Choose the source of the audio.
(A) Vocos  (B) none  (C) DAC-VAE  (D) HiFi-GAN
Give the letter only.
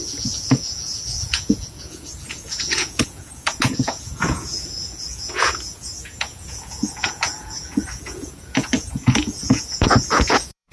A